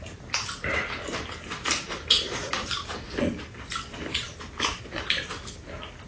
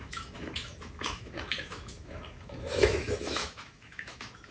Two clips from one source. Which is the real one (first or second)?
first